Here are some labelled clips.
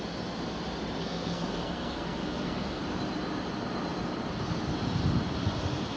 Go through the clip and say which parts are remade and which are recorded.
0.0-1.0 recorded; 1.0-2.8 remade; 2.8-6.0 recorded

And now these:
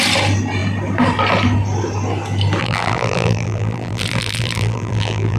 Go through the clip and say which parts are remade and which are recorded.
0.0-2.6 recorded; 2.6-5.4 remade

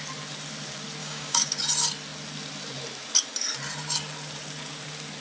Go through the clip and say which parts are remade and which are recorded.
0.0-1.0 recorded; 1.0-1.6 remade; 1.6-5.2 recorded

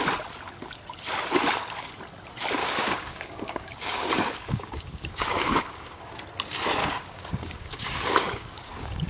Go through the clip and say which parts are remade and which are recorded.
0.0-2.6 recorded; 2.6-6.2 remade; 6.2-6.8 recorded; 6.8-9.1 remade

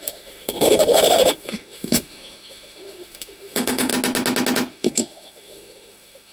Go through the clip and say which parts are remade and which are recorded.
0.0-3.9 remade; 3.9-4.7 recorded; 4.7-6.3 remade

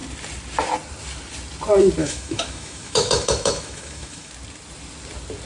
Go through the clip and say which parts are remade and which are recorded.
0.0-2.0 recorded; 2.0-4.3 remade; 4.3-5.5 recorded